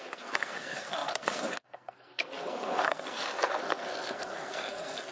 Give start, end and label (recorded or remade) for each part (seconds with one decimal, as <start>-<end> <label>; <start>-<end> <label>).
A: 0.0-5.1 remade